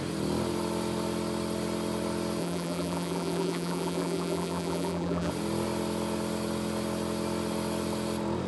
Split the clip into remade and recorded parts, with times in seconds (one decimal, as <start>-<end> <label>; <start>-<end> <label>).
0.0-2.4 recorded; 2.4-5.3 remade; 5.3-8.5 recorded